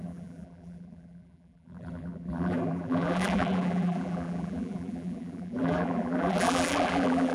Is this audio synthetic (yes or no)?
yes